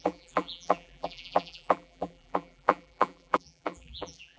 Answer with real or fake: fake